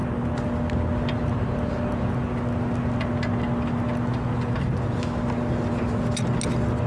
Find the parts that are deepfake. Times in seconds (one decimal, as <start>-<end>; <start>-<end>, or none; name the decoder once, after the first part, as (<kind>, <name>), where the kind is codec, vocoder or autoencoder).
none